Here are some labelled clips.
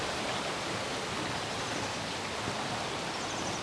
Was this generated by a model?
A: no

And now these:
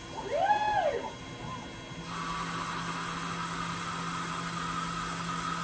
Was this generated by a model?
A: no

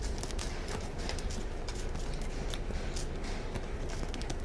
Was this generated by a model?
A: no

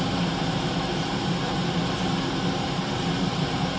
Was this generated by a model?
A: yes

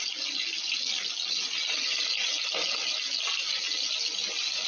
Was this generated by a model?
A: no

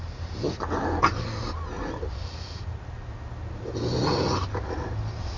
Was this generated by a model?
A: no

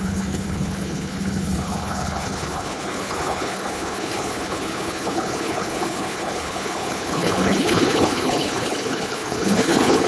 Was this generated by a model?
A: yes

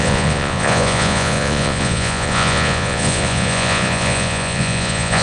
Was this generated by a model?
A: yes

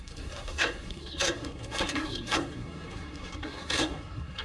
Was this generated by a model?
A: yes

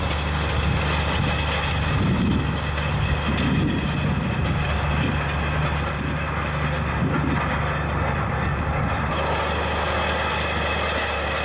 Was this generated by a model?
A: no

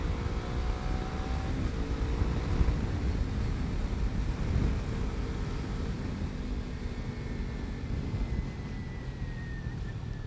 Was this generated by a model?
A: no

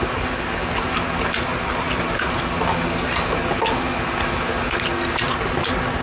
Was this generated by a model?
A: no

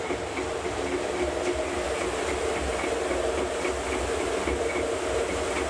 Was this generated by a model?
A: no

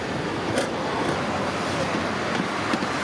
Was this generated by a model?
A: no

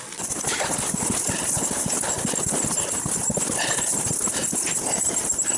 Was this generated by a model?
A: no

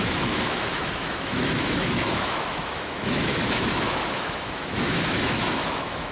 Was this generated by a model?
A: yes